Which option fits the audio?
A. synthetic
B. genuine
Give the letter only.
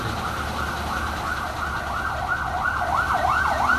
B